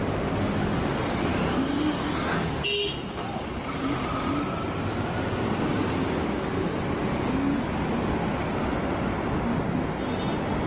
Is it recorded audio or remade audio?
recorded